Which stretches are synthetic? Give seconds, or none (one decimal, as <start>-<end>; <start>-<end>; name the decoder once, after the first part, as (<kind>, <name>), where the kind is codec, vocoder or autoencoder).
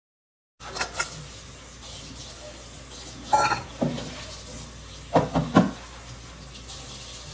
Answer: none